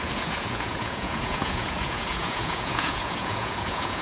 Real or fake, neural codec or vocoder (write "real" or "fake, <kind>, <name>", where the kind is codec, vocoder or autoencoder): fake, vocoder, Vocos